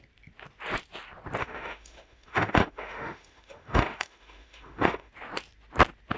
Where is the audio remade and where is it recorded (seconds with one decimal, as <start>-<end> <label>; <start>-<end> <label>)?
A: 0.0-1.4 recorded; 1.4-5.1 remade; 5.1-6.2 recorded